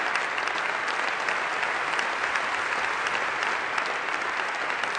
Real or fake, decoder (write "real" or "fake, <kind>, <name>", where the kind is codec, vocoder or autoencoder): real